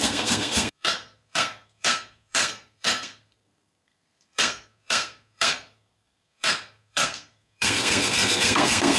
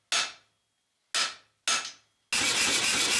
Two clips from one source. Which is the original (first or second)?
second